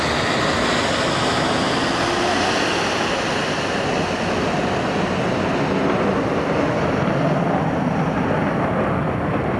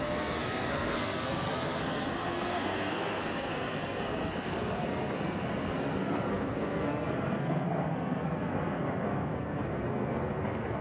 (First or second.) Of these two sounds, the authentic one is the first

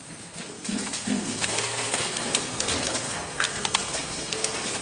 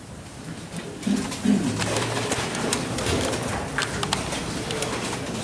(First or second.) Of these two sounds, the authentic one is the second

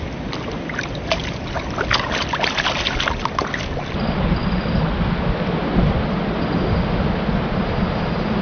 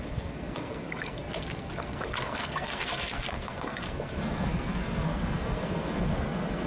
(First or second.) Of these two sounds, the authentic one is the first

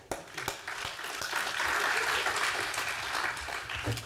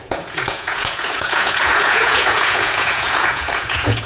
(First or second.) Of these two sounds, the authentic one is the first